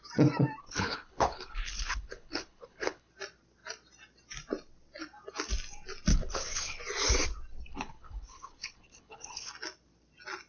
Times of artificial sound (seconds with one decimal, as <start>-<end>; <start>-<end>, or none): 0.6-3.1; 6.1-6.8; 7.7-9.5